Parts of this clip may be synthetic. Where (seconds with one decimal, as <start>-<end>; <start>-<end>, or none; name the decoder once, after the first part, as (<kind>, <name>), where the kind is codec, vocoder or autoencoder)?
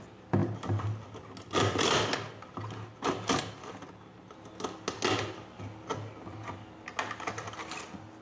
none